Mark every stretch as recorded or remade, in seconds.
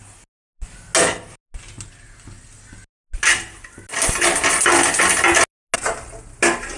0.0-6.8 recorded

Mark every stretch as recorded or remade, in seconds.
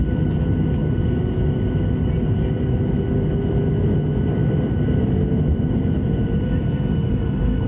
0.0-7.7 recorded